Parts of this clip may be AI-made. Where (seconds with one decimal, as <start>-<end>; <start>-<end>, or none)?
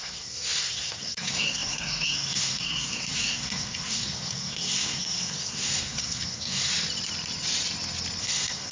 0.0-6.7; 8.2-8.7